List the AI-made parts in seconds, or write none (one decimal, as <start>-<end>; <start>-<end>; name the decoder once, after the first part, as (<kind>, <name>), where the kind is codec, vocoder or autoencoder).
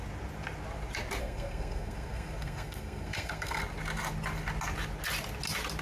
1.2-3.6 (codec, SNAC)